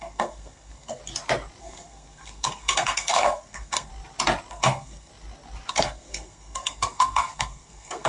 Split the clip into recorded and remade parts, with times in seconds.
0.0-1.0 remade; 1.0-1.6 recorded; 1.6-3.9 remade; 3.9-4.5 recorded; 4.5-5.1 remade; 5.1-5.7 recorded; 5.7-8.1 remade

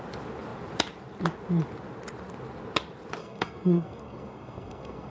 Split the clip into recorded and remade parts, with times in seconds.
0.0-3.2 recorded; 3.2-5.1 remade

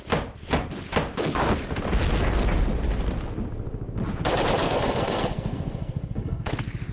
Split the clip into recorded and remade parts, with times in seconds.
0.0-4.6 recorded; 4.6-6.5 remade; 6.5-6.9 recorded

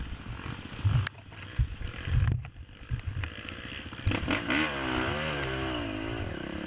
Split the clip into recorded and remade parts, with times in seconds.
0.0-6.7 recorded

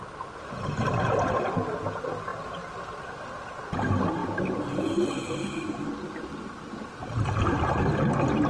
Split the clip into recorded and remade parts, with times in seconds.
0.0-8.5 recorded

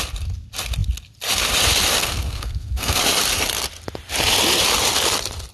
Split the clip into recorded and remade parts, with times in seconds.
0.0-2.0 recorded; 2.0-3.0 remade; 3.0-5.5 recorded